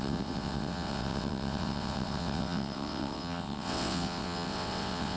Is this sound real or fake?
fake